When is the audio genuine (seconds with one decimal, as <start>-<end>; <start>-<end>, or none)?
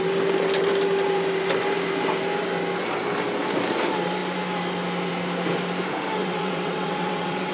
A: 0.0-6.2